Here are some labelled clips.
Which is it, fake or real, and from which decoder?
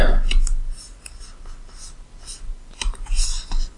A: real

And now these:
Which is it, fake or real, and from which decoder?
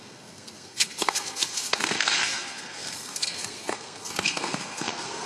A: fake, codec, SNAC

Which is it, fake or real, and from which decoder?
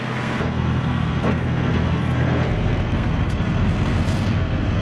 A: fake, codec, SNAC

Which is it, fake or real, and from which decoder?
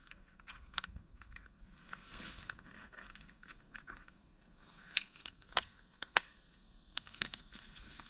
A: fake, codec, SNAC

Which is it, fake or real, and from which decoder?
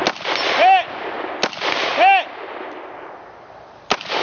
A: real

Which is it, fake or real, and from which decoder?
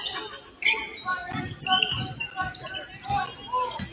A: real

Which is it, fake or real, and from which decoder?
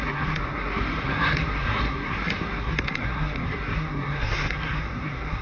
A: fake, codec, SNAC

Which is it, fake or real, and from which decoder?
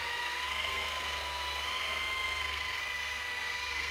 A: fake, codec, SNAC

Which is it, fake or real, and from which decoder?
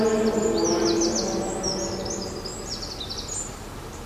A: real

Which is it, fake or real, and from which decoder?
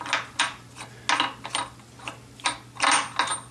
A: real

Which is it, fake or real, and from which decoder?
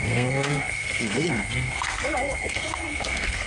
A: fake, codec, SNAC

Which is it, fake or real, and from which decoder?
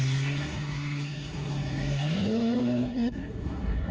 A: fake, codec, SNAC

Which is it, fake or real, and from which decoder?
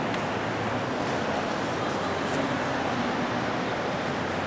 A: real